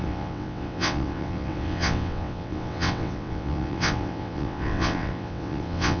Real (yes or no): no